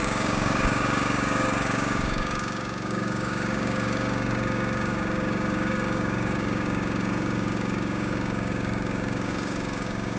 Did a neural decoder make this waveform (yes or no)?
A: yes